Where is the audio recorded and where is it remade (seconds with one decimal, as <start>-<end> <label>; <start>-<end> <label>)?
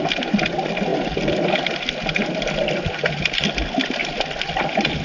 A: 0.0-4.0 recorded; 4.0-5.0 remade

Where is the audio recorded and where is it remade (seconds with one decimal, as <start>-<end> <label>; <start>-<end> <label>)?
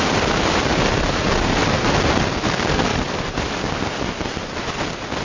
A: 0.0-0.7 recorded; 0.7-1.9 remade; 1.9-2.9 recorded; 2.9-3.5 remade; 3.5-5.2 recorded